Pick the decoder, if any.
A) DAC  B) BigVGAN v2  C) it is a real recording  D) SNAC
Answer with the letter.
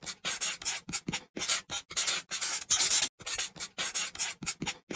C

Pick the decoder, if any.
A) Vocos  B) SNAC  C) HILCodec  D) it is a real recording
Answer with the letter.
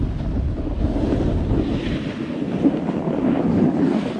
D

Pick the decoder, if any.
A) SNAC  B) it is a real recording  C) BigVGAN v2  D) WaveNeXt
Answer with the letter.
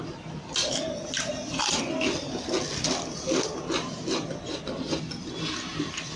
B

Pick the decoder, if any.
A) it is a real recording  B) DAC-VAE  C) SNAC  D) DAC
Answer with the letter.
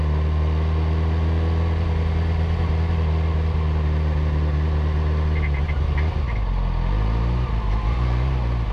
A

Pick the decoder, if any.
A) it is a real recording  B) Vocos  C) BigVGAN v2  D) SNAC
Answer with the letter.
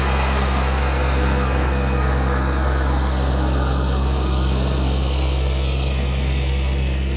D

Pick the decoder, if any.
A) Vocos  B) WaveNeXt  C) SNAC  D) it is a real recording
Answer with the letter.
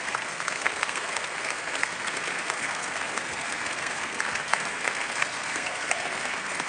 C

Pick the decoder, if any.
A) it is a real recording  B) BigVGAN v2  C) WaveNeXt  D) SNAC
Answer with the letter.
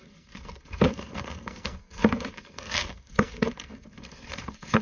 D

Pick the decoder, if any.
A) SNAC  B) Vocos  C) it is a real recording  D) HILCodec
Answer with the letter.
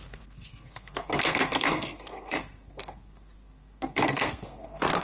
A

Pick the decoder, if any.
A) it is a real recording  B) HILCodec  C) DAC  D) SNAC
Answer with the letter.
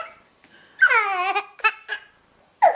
A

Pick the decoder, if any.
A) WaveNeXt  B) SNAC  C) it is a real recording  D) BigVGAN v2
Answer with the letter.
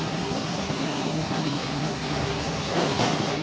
B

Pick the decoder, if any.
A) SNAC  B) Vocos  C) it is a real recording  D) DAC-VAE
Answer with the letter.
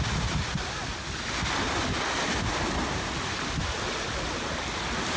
C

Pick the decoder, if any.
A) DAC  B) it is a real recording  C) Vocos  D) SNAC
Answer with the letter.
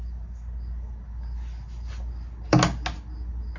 B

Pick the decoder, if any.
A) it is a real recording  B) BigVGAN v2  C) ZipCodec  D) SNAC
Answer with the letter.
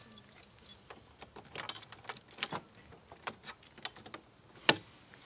A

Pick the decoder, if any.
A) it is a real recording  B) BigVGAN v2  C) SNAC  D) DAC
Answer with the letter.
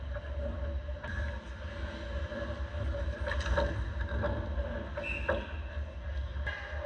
A